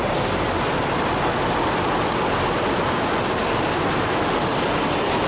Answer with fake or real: real